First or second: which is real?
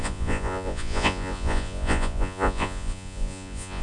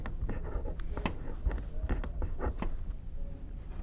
second